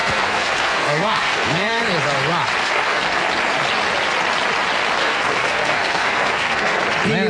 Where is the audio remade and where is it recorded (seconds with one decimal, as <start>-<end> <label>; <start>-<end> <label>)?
0.0-1.8 remade; 1.8-2.6 recorded; 2.6-3.2 remade; 3.2-5.0 recorded; 5.0-6.8 remade; 6.8-7.3 recorded